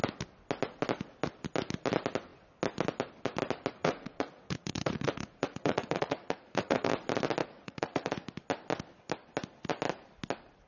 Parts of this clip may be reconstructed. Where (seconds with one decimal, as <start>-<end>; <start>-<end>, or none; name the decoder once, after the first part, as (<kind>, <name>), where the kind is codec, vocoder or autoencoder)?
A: 3.8-6.9 (vocoder, Vocos); 7.4-8.1